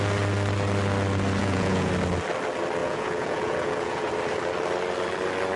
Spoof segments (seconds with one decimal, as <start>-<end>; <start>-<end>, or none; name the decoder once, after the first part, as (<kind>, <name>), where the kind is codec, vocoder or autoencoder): 1.4-1.9 (vocoder, Vocos); 2.8-4.1